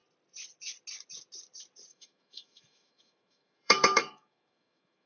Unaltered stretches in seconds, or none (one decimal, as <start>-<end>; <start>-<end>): 0.0-1.9